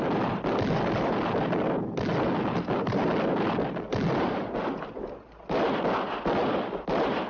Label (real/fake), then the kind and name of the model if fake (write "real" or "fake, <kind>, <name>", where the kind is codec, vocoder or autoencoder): real